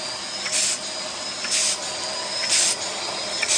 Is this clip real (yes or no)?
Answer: yes